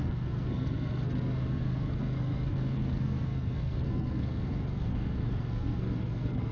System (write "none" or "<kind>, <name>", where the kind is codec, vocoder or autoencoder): codec, SNAC